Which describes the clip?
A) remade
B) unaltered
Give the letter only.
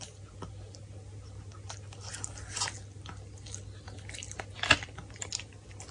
B